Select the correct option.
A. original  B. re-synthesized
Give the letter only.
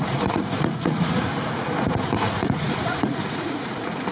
B